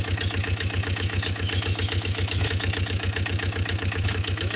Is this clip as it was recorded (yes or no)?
no